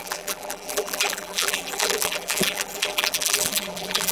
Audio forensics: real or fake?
fake